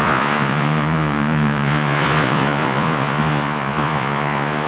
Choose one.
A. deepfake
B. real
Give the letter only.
A